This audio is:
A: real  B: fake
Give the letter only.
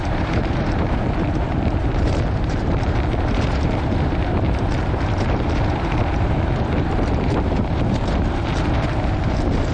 B